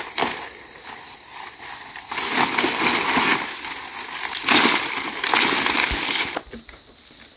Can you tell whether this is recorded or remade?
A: recorded